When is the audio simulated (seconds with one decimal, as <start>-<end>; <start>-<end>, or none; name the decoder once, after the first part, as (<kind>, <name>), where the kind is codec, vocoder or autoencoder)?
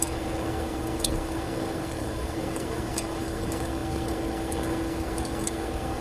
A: 0.0-6.0 (codec, SNAC)